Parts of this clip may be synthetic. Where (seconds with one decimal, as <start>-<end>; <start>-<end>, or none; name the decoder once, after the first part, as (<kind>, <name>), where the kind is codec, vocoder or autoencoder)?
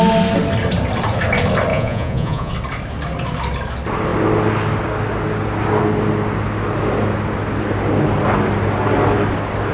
1.7-2.5 (vocoder, Vocos)